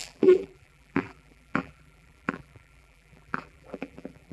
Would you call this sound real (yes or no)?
no